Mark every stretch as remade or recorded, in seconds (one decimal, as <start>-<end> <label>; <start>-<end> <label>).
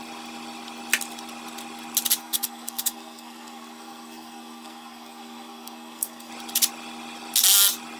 0.0-2.2 recorded; 2.2-6.3 remade; 6.3-8.0 recorded